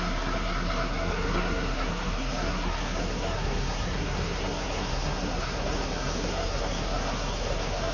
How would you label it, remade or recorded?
remade